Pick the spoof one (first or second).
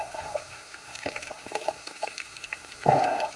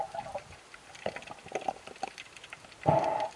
first